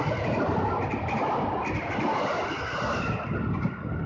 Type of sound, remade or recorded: recorded